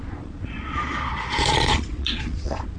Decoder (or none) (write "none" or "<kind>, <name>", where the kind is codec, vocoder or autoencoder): vocoder, Vocos